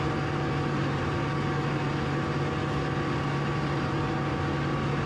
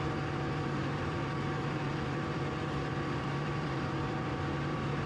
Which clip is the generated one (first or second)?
second